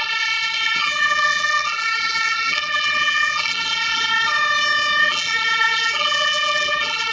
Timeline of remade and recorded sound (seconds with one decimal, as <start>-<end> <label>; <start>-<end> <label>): 0.0-4.1 remade; 4.1-5.0 recorded; 5.0-7.1 remade